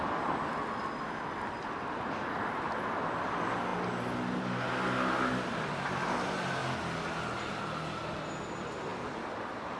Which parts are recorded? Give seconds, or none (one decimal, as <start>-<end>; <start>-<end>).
0.0-9.8